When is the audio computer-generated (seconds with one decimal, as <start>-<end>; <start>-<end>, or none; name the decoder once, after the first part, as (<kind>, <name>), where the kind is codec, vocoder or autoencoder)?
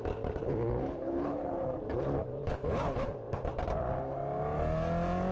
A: 0.4-1.5 (codec, HILCodec); 2.4-3.1